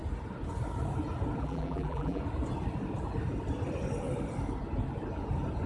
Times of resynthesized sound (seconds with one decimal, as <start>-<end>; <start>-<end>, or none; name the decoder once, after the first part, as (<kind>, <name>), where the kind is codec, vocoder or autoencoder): 1.4-2.2 (vocoder, BigVGAN v2)